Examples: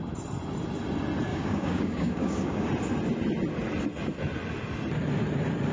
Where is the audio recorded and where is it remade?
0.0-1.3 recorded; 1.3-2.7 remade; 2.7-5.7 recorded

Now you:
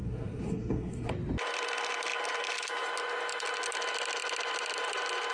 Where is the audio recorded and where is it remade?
0.0-1.1 remade; 1.1-5.3 recorded

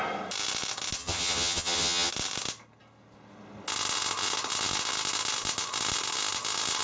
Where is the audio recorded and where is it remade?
0.0-1.0 recorded; 1.0-2.1 remade; 2.1-6.8 recorded

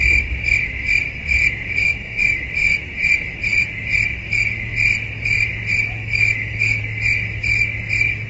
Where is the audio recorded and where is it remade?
0.0-1.8 recorded; 1.8-2.4 remade; 2.4-6.0 recorded; 6.0-6.8 remade; 6.8-8.3 recorded